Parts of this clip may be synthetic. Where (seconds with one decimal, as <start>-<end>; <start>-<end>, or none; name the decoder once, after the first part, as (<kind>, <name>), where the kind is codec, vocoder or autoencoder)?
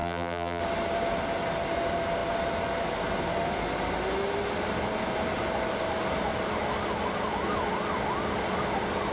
0.0-0.6 (vocoder, BigVGAN v2)